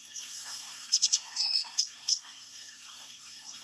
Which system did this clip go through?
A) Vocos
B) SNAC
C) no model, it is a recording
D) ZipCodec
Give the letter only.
B